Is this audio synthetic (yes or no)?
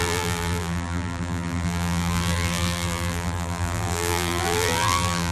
yes